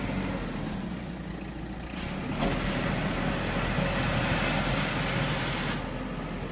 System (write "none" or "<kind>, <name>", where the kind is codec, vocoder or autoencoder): none